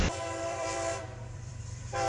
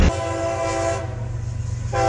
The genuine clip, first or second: second